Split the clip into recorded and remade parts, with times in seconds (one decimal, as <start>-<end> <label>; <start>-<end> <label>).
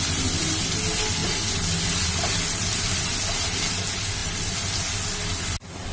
0.0-5.9 recorded